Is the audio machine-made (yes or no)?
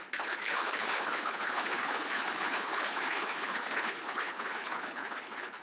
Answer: yes